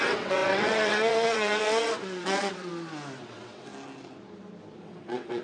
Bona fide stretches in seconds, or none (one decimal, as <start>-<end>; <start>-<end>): 2.7-3.2; 3.7-4.8